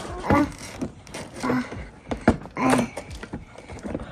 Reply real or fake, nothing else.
fake